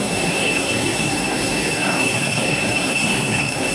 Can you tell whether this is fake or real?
fake